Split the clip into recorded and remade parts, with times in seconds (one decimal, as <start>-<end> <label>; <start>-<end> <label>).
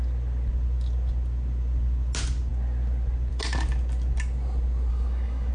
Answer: 0.0-4.9 recorded; 4.9-5.5 remade